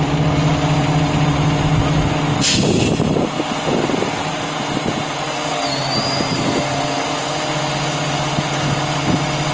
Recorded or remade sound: recorded